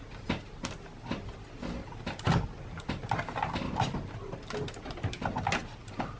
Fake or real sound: real